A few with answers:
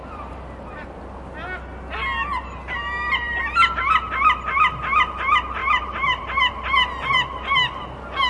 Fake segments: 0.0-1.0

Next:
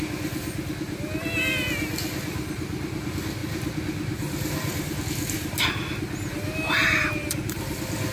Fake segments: 3.4-5.0; 6.8-7.6

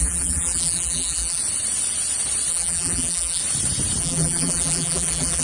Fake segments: 0.0-1.4; 2.5-3.4; 4.0-5.4

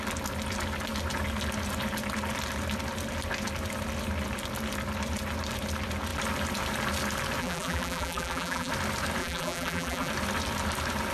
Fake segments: 7.4-8.7; 9.2-10.1

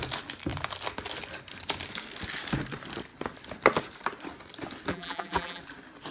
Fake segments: 4.9-5.6